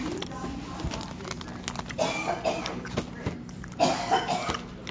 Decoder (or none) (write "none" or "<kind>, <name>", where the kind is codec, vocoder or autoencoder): none